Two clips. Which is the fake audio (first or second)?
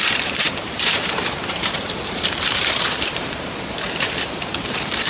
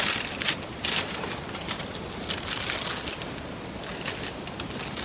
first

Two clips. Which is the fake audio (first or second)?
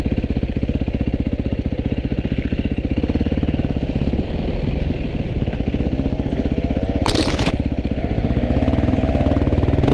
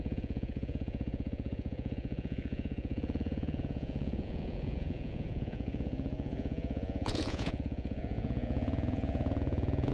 second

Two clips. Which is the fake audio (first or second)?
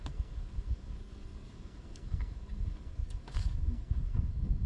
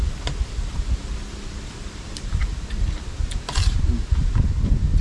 first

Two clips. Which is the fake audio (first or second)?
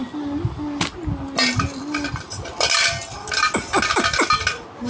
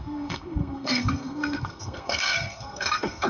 second